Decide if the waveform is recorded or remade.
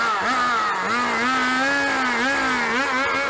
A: recorded